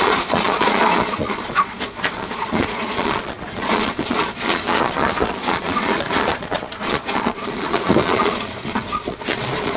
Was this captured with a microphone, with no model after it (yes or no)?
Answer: no